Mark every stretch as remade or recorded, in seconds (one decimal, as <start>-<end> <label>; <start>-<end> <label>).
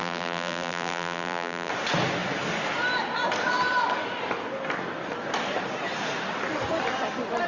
0.0-1.7 remade; 1.7-7.5 recorded